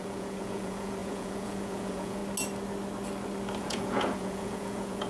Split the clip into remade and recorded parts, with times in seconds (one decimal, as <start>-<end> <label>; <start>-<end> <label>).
0.0-2.2 remade; 2.2-3.6 recorded; 3.6-5.1 remade